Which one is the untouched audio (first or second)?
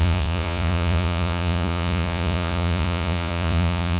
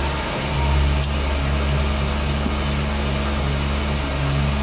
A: second